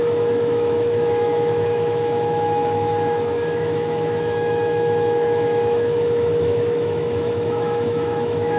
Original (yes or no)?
no